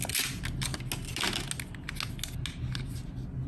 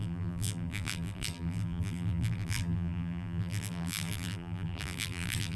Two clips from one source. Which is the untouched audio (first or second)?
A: first